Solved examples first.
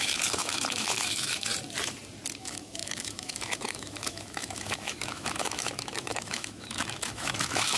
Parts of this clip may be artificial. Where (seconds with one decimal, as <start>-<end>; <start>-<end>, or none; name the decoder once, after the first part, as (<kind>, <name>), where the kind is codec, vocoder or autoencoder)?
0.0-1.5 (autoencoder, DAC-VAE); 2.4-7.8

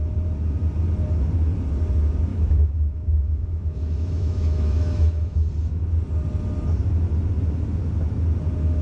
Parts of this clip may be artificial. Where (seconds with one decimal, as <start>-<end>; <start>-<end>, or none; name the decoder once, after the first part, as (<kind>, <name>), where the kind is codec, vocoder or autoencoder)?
2.3-5.5 (autoencoder, DAC-VAE)

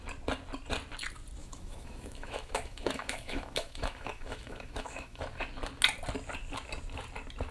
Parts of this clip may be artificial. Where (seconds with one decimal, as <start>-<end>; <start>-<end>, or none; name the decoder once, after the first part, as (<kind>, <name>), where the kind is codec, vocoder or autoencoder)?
1.4-5.2 (autoencoder, DAC-VAE)

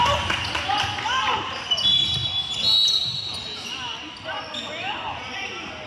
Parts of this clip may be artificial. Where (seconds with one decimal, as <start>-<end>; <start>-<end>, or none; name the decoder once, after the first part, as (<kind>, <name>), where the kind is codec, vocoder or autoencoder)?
none

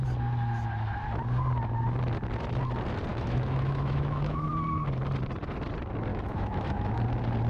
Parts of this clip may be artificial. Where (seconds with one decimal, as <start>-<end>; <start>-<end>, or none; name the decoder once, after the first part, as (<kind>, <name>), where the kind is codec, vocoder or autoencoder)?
3.1-4.5 (autoencoder, DAC-VAE); 6.1-7.0

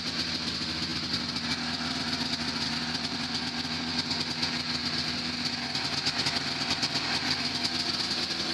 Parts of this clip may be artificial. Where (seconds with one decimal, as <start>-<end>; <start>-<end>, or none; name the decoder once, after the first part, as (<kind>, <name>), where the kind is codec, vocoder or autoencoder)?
none